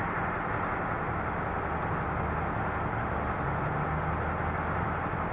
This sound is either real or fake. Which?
real